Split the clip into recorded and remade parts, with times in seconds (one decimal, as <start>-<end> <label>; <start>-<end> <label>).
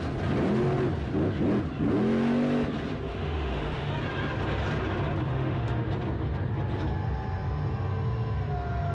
0.0-3.1 recorded; 3.1-3.9 remade; 3.9-5.3 recorded; 5.3-5.9 remade; 5.9-8.9 recorded